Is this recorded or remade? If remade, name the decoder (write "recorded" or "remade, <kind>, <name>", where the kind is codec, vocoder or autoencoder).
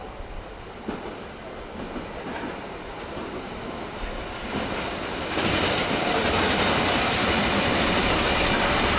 recorded